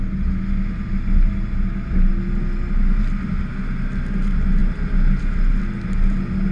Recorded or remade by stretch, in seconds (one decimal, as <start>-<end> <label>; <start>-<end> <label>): 0.0-6.5 recorded